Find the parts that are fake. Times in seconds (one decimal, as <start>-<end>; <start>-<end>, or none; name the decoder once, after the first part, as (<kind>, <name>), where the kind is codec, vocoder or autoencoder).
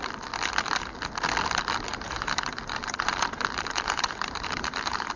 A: 1.9-5.2 (vocoder, BigVGAN v2)